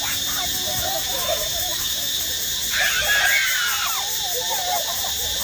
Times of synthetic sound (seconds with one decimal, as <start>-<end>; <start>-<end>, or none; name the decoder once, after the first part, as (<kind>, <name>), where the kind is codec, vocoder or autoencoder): 0.7-2.2 (autoencoder, DAC-VAE)